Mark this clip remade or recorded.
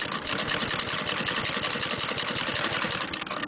recorded